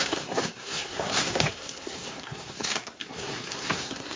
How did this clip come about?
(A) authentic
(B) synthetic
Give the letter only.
B